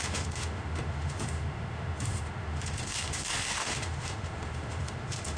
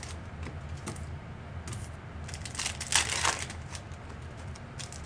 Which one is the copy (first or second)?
first